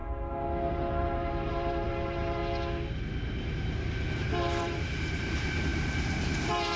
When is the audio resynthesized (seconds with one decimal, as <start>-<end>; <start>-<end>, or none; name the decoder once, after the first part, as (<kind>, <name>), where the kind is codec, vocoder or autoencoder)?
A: 0.7-2.4 (vocoder, BigVGAN v2); 4.1-6.8